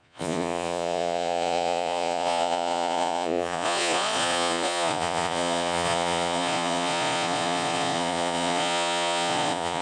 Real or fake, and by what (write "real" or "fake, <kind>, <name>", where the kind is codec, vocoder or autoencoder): fake, vocoder, Vocos